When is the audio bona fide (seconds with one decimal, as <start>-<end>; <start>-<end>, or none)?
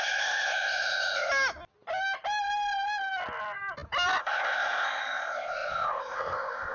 1.3-4.2